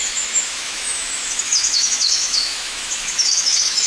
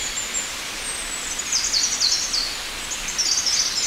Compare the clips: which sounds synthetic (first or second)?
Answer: first